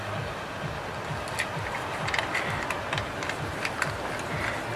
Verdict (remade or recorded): recorded